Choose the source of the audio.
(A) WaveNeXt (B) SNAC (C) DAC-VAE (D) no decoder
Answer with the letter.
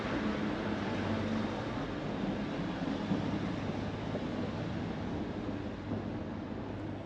D